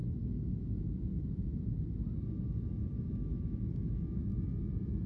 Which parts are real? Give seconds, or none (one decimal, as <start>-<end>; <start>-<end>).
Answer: 1.1-3.1; 4.3-5.1